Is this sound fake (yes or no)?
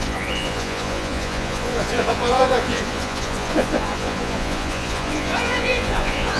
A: yes